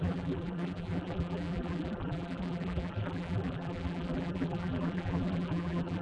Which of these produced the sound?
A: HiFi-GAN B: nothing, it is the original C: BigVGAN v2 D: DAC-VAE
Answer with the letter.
C